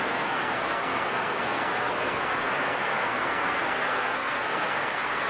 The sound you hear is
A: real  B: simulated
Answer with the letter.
B